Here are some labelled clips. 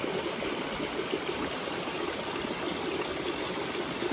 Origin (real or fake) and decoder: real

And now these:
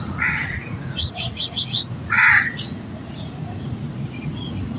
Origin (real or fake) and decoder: fake, vocoder, Vocos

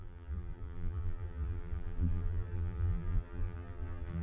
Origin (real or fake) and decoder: fake, vocoder, BigVGAN v2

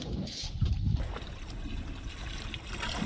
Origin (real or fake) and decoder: real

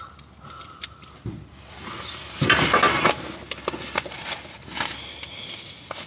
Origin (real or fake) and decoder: real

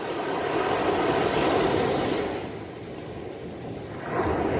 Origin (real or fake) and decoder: real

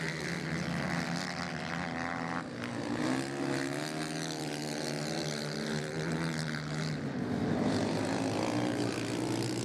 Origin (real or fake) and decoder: real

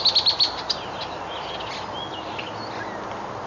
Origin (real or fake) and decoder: real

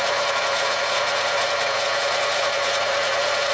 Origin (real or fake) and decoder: fake, vocoder, Vocos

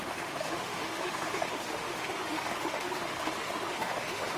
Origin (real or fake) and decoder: fake, autoencoder, DAC-VAE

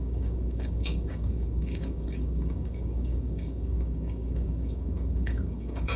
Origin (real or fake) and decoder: fake, codec, DAC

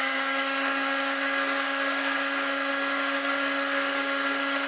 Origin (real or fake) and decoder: fake, codec, DAC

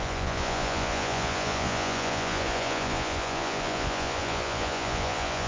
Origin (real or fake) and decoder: fake, vocoder, Vocos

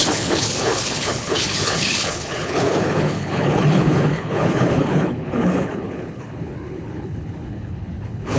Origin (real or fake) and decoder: fake, codec, HILCodec